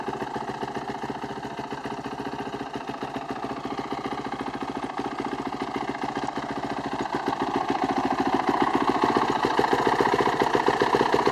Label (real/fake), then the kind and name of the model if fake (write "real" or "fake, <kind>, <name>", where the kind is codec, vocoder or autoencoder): real